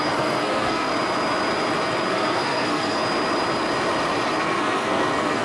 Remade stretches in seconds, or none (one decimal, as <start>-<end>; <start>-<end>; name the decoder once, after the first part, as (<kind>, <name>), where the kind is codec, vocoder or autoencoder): 0.0-0.9 (codec, SNAC); 2.1-3.0; 4.4-5.4